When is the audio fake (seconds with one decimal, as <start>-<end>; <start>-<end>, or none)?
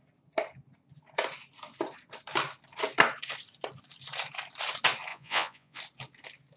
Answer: 5.1-5.8